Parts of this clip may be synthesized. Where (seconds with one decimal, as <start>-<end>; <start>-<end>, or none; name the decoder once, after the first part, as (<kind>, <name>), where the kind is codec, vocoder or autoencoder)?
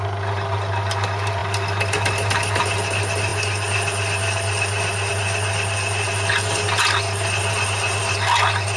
none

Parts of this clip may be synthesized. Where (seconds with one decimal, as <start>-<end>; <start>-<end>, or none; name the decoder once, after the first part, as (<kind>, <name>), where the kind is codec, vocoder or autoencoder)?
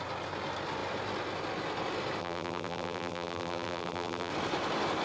2.2-4.3 (vocoder, BigVGAN v2)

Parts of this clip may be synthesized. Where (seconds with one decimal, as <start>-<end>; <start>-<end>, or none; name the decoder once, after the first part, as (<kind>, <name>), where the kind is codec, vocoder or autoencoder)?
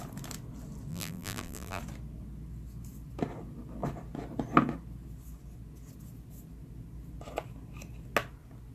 0.9-1.8 (vocoder, BigVGAN v2)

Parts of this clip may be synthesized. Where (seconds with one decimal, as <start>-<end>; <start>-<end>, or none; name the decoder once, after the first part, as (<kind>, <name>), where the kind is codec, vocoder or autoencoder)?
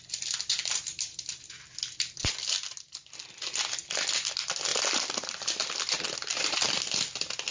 3.8-4.3 (vocoder, BigVGAN v2); 4.7-6.4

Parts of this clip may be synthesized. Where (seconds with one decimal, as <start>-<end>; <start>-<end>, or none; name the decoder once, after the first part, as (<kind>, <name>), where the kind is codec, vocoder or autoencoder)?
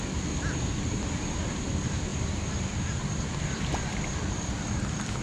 none